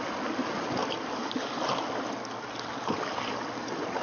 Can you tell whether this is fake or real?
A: real